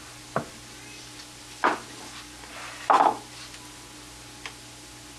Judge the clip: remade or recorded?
recorded